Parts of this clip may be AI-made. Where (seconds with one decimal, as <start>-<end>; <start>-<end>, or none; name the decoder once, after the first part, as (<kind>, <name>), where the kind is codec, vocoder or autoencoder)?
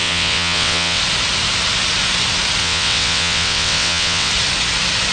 0.0-1.0 (vocoder, WaveNeXt); 2.6-4.3